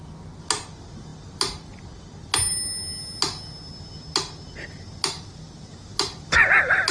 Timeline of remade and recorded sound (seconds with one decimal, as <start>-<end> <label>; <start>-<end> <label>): 0.0-6.9 recorded